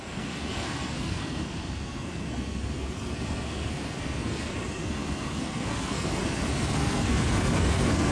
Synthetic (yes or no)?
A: yes